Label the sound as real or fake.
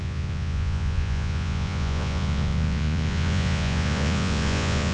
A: fake